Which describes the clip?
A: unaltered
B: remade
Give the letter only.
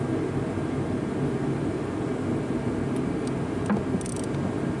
A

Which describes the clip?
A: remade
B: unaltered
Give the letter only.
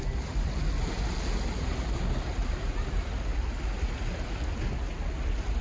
B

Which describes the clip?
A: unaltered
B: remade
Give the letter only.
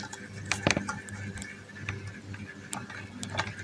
A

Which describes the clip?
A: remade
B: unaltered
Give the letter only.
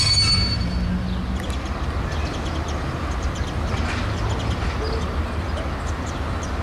B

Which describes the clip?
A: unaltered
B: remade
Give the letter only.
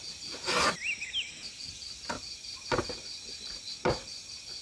A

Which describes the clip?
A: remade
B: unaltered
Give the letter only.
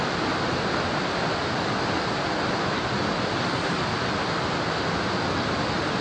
B